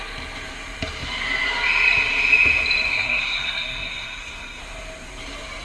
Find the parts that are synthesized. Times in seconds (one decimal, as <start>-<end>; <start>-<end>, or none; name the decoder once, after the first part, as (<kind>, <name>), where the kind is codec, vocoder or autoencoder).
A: 2.9-4.6 (codec, SNAC)